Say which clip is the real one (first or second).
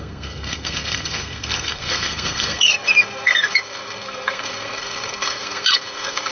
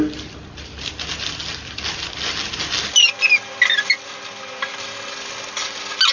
second